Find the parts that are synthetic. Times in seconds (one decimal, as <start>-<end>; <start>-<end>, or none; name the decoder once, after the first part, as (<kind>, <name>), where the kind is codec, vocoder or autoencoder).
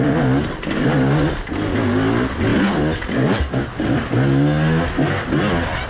none